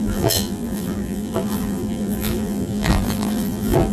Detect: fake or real fake